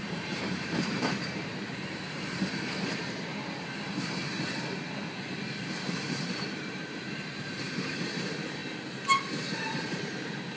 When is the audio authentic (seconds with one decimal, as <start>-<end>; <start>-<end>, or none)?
3.3-5.6; 8.6-9.8